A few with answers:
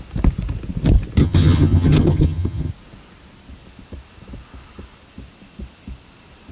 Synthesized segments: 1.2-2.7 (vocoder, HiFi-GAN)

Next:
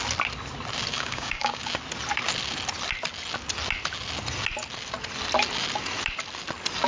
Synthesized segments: 0.9-1.6 (codec, DAC)

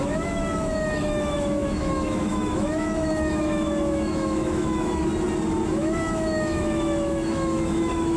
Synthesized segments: 0.0-5.1 (autoencoder, DAC-VAE); 5.7-8.2

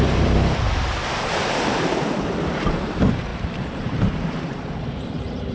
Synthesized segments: 0.0-5.5 (vocoder, BigVGAN v2)

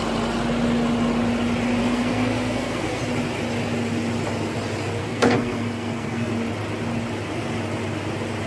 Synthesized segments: 1.8-3.0 (codec, SNAC); 5.0-6.3